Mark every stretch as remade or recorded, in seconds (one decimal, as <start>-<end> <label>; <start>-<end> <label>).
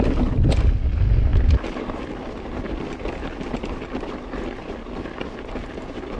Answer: 0.0-6.2 recorded